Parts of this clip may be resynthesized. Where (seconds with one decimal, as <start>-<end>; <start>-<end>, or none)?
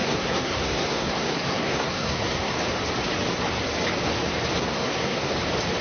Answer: 0.0-2.5; 4.6-5.3